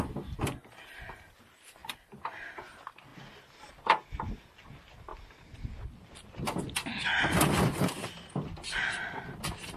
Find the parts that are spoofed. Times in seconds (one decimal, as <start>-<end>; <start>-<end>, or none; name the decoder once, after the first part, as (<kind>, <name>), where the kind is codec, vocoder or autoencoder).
none